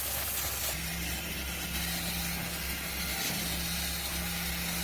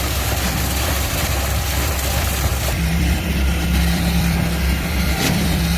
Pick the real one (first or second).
first